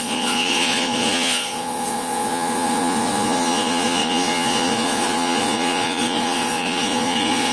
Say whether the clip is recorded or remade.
remade